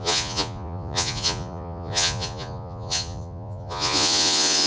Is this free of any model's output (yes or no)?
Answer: no